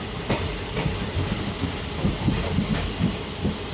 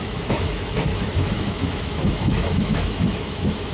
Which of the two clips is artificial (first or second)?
second